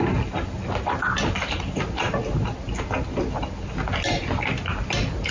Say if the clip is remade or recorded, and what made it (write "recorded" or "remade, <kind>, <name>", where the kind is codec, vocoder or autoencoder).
recorded